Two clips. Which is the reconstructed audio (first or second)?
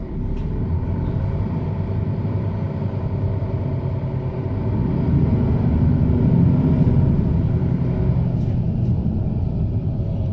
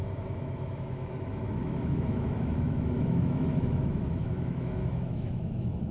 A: second